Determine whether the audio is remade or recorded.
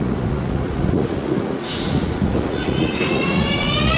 remade